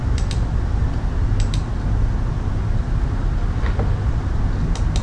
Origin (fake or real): real